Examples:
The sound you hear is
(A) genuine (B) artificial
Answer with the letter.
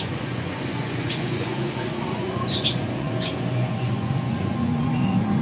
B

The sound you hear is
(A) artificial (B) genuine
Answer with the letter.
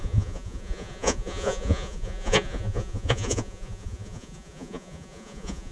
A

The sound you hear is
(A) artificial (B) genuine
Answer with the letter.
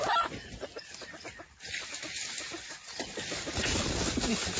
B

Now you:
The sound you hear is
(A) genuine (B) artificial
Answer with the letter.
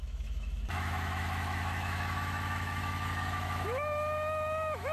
B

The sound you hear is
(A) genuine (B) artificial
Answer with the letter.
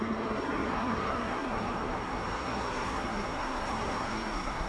B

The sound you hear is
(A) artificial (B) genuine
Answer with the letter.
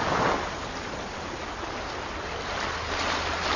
B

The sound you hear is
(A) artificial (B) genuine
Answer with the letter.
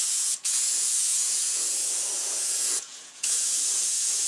A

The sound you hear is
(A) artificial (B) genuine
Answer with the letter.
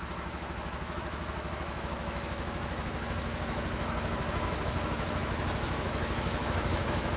A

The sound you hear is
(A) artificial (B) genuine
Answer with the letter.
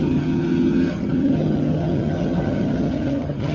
A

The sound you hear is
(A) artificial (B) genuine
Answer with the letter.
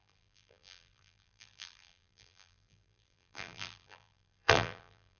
A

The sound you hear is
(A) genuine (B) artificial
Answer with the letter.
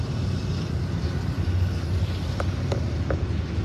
A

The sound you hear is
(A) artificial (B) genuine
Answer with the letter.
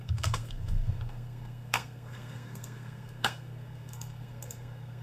A